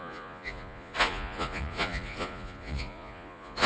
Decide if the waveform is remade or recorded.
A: remade